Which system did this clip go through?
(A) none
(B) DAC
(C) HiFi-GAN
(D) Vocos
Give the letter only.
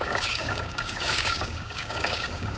B